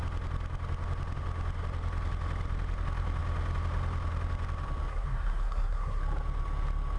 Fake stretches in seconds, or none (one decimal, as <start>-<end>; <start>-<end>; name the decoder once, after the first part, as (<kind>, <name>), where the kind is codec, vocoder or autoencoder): 4.9-6.0 (codec, SNAC)